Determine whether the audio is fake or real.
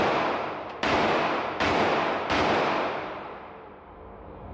fake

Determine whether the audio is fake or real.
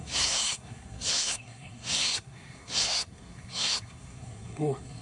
fake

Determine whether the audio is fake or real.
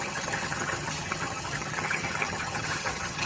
fake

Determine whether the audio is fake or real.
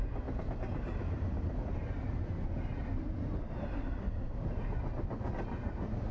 real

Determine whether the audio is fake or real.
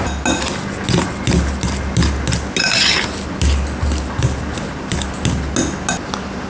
real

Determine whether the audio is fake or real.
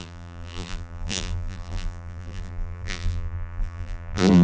fake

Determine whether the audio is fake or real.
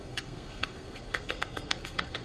fake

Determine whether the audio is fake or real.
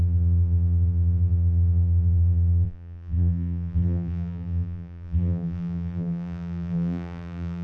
fake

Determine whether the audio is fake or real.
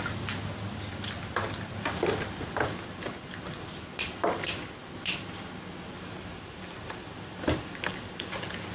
real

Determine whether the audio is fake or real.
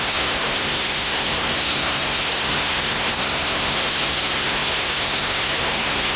fake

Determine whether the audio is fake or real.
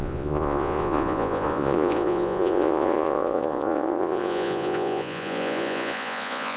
fake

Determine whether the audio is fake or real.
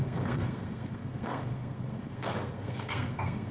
fake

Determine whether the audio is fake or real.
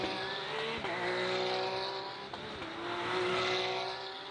real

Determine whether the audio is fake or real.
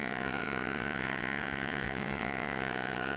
fake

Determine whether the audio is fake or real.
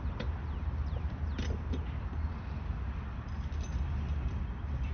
real